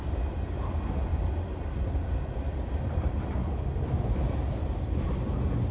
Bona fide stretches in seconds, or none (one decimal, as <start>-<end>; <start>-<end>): 0.0-5.7